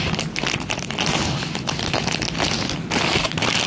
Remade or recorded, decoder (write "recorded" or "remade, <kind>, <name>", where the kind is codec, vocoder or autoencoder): recorded